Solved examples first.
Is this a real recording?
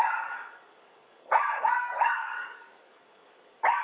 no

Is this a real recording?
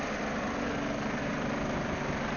yes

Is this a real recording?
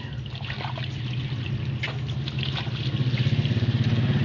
yes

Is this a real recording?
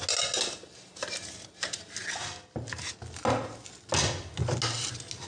yes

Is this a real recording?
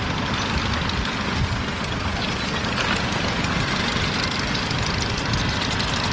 yes